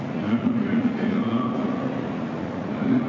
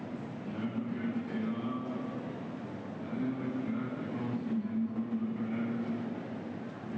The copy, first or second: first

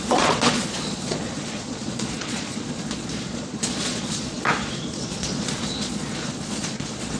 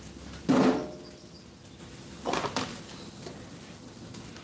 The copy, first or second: first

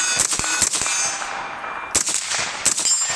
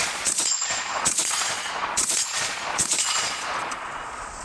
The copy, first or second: second